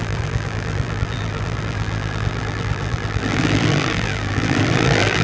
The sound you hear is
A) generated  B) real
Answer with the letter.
A